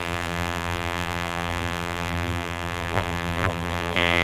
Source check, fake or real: fake